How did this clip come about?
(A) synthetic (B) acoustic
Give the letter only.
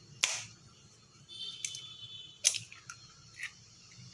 B